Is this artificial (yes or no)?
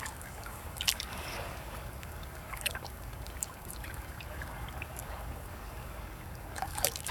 yes